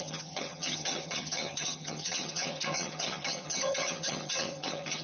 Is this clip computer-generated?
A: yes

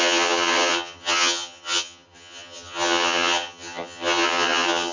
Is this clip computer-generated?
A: yes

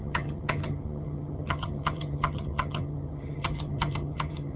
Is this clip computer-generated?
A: yes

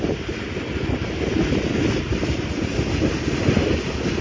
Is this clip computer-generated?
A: no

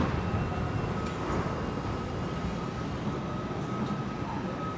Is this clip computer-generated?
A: no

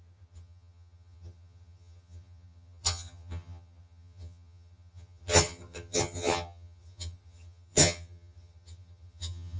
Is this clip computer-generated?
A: yes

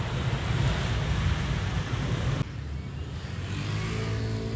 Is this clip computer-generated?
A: no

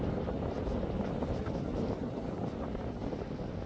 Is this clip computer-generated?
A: no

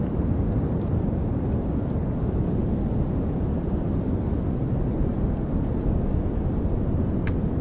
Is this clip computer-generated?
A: no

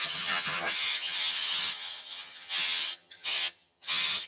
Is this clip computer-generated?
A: yes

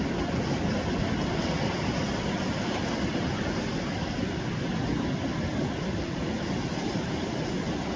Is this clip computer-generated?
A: no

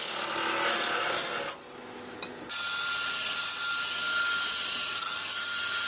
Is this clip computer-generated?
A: no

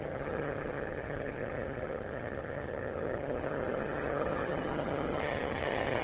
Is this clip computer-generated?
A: yes